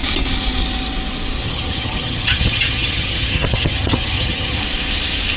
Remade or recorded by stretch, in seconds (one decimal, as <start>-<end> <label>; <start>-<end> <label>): 0.0-1.4 recorded; 1.4-4.6 remade; 4.6-5.4 recorded

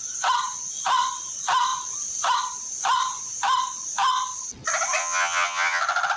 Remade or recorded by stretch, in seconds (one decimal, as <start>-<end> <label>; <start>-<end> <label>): 0.0-5.0 recorded; 5.0-5.8 remade; 5.8-6.2 recorded

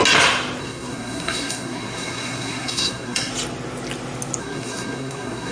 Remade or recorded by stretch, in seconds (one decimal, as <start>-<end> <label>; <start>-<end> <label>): 0.0-0.6 recorded; 0.6-3.3 remade; 3.3-4.4 recorded; 4.4-5.5 remade

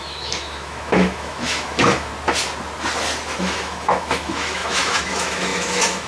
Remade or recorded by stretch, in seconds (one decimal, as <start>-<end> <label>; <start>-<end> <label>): 0.0-2.1 remade; 2.1-3.4 recorded; 3.4-6.1 remade